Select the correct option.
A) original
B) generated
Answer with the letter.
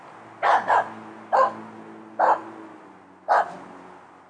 A